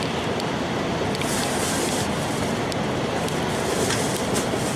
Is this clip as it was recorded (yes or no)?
yes